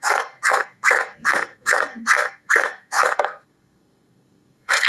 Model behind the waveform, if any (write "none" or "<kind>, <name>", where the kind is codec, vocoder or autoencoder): codec, SNAC